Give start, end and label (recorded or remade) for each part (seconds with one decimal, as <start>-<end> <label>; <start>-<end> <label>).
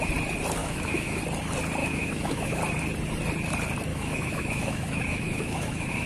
0.0-0.6 recorded; 0.6-1.2 remade; 1.2-1.8 recorded; 1.8-2.6 remade; 2.6-3.9 recorded; 3.9-6.1 remade